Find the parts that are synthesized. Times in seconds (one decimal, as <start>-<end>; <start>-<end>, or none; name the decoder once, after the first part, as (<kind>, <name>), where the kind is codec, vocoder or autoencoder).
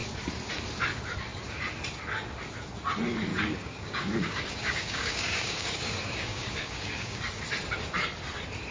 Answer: 3.3-7.2 (codec, DAC)